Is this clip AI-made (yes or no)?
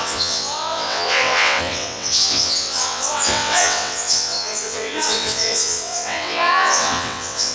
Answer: yes